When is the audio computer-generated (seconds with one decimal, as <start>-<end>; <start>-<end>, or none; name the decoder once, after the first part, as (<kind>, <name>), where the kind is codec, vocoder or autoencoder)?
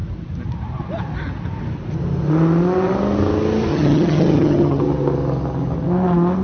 3.7-4.8 (vocoder, HiFi-GAN)